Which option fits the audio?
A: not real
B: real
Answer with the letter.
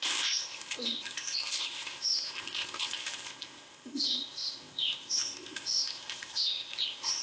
A